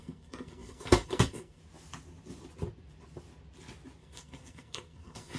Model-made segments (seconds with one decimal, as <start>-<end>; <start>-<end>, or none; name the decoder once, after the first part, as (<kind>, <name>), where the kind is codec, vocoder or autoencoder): 0.0-1.6 (codec, SNAC); 4.0-5.4